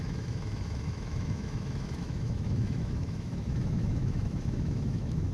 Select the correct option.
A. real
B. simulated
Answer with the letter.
B